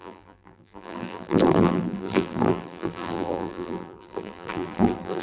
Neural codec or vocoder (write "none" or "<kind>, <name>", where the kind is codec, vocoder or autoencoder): vocoder, BigVGAN v2